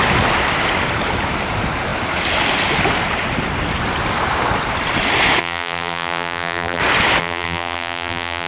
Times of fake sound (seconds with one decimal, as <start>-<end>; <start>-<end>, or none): 5.4-6.8; 7.2-8.5